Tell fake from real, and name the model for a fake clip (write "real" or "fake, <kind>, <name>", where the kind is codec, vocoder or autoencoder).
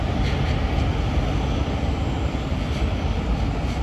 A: real